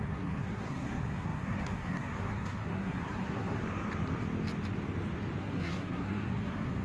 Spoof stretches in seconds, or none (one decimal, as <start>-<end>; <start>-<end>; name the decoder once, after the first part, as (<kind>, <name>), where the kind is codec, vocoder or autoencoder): 0.0-3.6 (codec, SNAC); 5.4-6.8